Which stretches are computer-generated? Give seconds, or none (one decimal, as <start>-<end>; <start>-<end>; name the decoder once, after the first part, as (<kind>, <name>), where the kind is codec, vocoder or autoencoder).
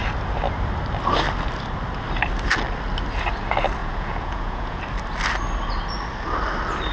3.8-4.8 (vocoder, Vocos)